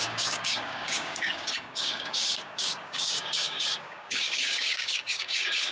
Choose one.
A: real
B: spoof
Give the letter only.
B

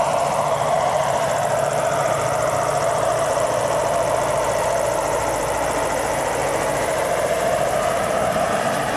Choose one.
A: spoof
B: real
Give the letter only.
A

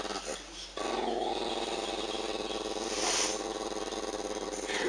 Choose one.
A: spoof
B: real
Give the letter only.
B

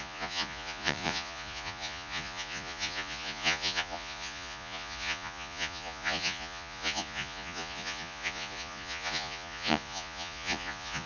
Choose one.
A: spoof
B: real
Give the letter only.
A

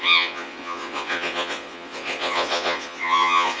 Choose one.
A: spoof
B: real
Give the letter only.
A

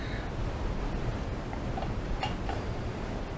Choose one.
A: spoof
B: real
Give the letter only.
B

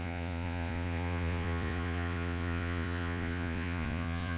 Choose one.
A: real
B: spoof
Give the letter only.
B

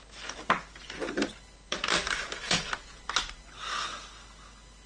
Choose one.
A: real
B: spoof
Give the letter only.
A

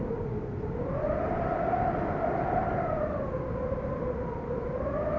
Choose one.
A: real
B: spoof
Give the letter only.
A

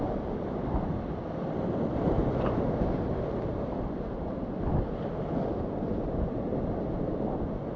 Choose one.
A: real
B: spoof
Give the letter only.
A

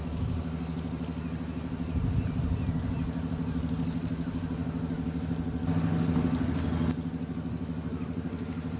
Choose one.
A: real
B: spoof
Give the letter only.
A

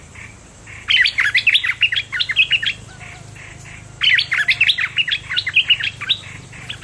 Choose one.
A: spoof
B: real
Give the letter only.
B